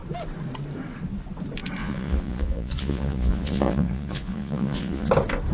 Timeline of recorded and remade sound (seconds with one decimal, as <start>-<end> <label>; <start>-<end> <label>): 0.0-1.8 recorded; 1.8-5.1 remade; 5.1-5.5 recorded

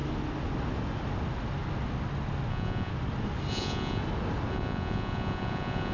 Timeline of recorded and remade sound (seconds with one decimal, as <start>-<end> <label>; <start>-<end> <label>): 0.0-2.5 recorded; 2.5-2.9 remade; 2.9-3.5 recorded; 3.5-4.0 remade; 4.0-4.5 recorded; 4.5-5.9 remade

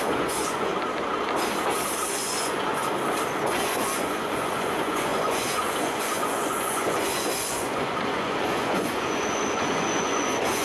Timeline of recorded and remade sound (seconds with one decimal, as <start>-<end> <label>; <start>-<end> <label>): 0.0-0.7 remade; 0.7-2.1 recorded; 2.1-2.8 remade; 2.8-3.4 recorded; 3.4-10.6 remade

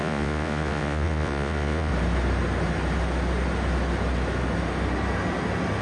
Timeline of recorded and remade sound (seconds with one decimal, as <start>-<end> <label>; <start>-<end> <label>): 0.0-1.9 remade; 1.9-5.8 recorded

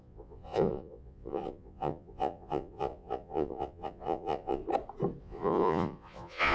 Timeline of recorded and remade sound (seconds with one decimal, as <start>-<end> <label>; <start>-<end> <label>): 0.0-4.6 remade; 4.6-5.2 recorded; 5.2-6.5 remade

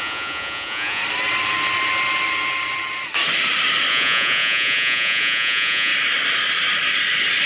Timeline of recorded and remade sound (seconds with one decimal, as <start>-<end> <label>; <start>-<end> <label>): 0.0-1.0 remade; 1.0-3.9 recorded; 3.9-5.9 remade; 5.9-7.5 recorded

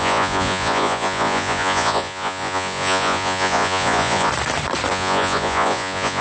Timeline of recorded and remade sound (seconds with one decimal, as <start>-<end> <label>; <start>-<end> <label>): 0.0-4.3 remade; 4.3-4.9 recorded; 4.9-6.2 remade